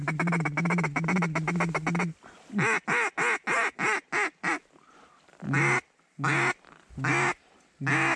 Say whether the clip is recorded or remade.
recorded